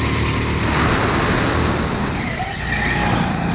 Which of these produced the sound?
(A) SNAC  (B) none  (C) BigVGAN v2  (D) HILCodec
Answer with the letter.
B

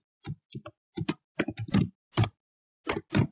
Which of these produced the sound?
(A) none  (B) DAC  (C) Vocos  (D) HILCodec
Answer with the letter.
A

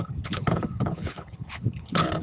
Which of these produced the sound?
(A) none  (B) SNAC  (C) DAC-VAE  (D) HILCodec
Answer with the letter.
D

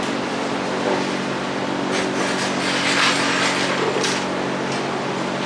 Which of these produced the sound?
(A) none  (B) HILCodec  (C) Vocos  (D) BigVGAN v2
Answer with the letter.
A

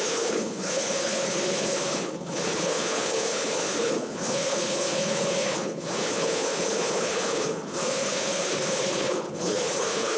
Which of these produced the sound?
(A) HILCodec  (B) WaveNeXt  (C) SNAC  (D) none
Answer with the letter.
A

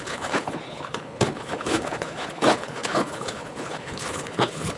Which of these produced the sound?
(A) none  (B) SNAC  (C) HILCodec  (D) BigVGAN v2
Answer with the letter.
C